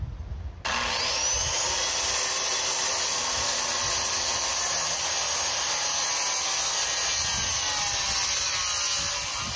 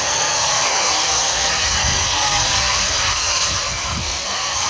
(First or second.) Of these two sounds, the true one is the first